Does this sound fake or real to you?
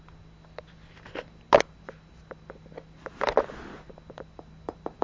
real